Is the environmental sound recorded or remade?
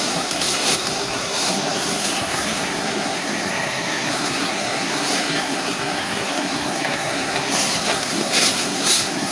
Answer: remade